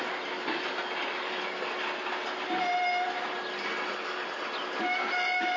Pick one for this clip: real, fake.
real